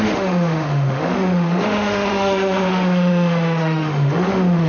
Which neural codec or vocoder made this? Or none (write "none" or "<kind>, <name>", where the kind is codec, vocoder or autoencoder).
autoencoder, DAC-VAE